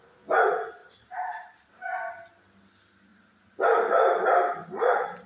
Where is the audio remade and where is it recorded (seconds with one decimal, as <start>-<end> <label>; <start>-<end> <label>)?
0.0-0.8 recorded; 0.8-1.7 remade; 1.7-3.1 recorded; 3.1-5.3 remade

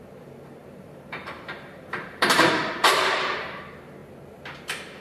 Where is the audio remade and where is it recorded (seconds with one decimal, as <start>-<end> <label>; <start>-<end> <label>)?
0.0-0.6 recorded; 0.6-3.6 remade; 3.6-5.0 recorded